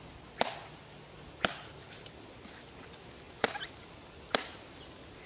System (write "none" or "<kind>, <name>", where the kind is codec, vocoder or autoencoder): none